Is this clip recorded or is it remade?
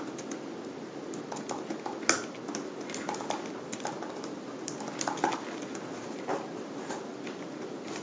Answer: recorded